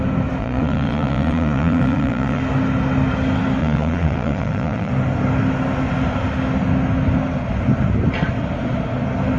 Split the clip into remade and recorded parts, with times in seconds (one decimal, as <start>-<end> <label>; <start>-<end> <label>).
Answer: 0.0-0.4 recorded; 0.4-2.4 remade; 2.4-3.6 recorded; 3.6-4.9 remade; 4.9-9.4 recorded